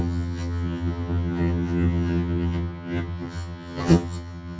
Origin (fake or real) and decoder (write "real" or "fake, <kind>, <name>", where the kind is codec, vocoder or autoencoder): fake, vocoder, HiFi-GAN